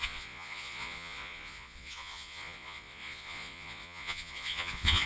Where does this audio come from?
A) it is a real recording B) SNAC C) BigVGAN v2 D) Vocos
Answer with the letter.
D